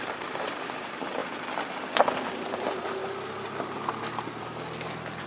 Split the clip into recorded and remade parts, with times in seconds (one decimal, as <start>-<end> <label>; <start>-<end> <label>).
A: 0.0-1.2 remade; 1.2-2.5 recorded; 2.5-3.0 remade; 3.0-5.3 recorded